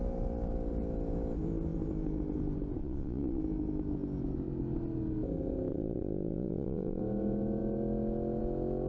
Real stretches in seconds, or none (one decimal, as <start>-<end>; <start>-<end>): 0.0-2.8; 3.4-5.7; 7.0-8.9